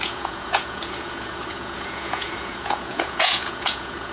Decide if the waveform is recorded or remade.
remade